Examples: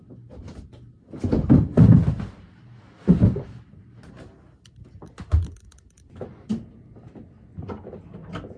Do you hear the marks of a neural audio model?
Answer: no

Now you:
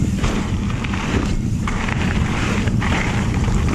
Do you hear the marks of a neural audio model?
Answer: yes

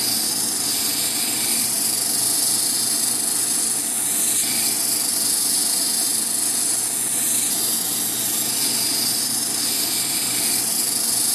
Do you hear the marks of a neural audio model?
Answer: no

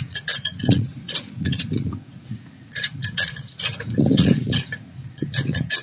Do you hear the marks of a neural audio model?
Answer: yes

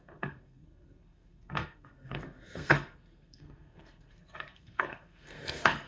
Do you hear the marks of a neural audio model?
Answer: yes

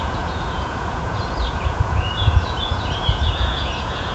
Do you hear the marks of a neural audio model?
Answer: yes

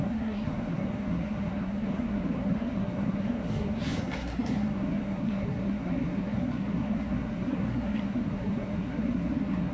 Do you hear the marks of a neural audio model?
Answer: yes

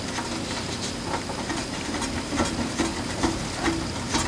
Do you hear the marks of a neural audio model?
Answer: no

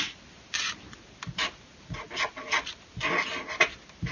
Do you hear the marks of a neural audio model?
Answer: no